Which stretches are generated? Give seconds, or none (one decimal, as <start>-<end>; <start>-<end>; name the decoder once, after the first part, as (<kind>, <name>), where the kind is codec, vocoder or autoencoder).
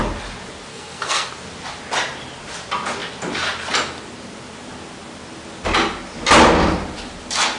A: 0.7-1.3 (codec, SNAC)